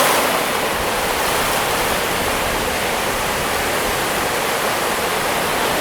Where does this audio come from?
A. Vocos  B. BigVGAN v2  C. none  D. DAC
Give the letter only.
C